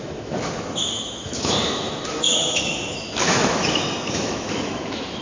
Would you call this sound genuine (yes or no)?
no